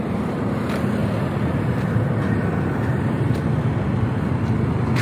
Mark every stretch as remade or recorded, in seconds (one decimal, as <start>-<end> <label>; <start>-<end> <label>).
0.0-5.0 recorded